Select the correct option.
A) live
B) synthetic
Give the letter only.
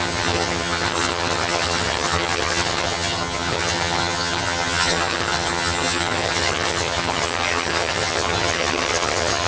B